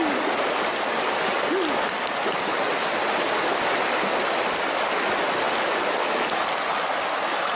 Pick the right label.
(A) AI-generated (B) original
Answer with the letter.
B